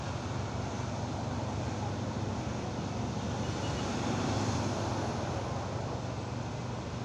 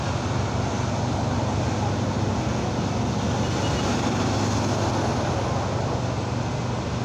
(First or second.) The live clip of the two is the second